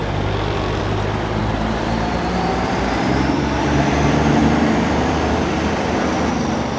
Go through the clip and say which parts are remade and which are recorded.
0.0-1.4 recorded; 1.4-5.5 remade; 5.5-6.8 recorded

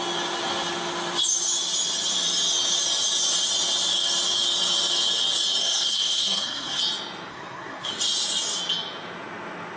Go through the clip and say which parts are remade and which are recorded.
0.0-5.6 recorded; 5.6-6.8 remade; 6.8-7.3 recorded; 7.3-7.9 remade; 7.9-9.8 recorded